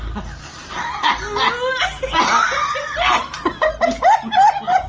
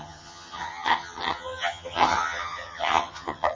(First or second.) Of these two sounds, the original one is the first